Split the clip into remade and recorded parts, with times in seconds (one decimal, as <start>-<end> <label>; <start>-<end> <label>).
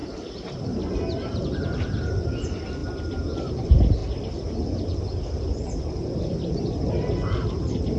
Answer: 0.0-8.0 recorded